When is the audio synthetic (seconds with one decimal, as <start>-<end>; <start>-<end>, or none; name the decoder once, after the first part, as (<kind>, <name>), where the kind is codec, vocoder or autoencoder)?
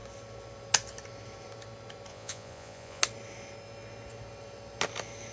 2.1-3.0 (vocoder, Vocos)